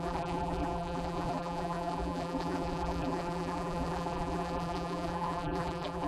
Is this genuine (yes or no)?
no